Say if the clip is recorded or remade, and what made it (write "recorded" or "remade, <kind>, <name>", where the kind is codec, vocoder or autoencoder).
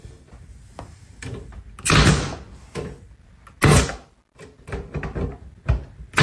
recorded